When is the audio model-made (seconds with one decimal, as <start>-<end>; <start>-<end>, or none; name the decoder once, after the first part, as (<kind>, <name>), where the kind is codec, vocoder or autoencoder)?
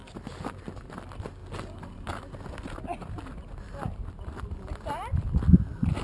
0.0-0.6 (vocoder, BigVGAN v2)